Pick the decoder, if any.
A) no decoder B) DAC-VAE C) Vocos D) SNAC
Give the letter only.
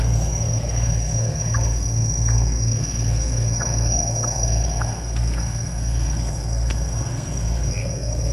D